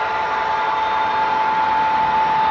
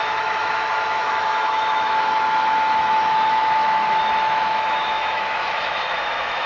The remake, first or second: second